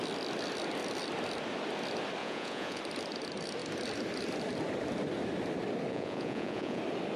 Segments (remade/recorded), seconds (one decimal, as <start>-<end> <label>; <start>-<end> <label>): 0.0-2.2 recorded; 2.2-2.8 remade; 2.8-5.9 recorded; 5.9-6.8 remade; 6.8-7.2 recorded